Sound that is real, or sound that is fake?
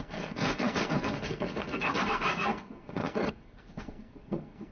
fake